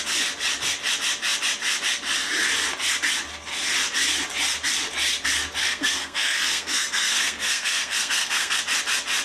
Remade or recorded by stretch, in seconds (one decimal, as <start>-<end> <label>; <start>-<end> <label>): 0.0-5.6 recorded; 5.6-8.6 remade; 8.6-9.2 recorded